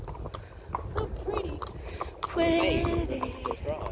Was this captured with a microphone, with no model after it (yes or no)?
yes